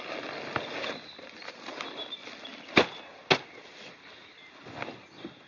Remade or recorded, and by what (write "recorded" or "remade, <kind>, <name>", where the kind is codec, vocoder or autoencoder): recorded